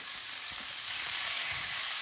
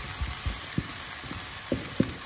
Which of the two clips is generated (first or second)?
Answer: first